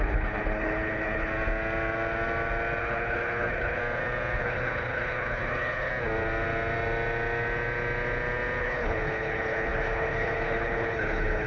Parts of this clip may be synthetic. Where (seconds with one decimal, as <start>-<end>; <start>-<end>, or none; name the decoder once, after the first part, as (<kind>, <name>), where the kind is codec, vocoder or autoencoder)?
0.0-1.3 (codec, HILCodec); 2.8-3.8; 4.4-5.9; 8.6-11.5